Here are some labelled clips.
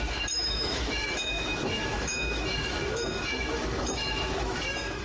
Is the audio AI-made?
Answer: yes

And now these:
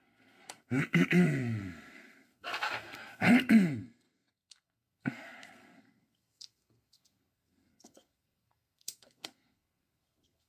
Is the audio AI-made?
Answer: yes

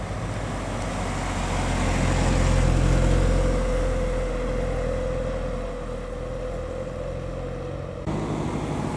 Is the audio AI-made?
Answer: no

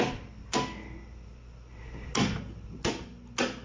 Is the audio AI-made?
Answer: no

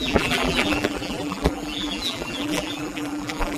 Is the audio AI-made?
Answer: yes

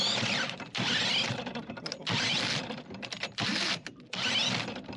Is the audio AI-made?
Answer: no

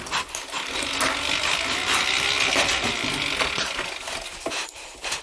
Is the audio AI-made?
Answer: no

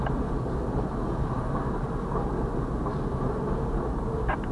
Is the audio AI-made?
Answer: no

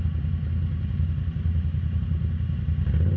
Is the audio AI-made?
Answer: no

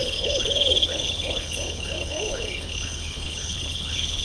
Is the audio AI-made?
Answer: yes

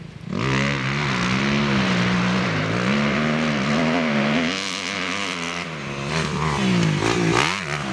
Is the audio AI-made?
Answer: no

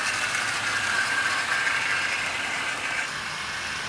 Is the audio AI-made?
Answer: no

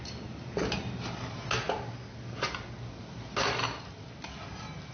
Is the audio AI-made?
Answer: no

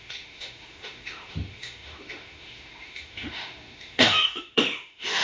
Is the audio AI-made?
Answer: yes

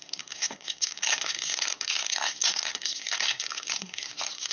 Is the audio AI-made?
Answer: yes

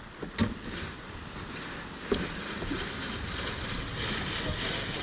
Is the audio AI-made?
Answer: no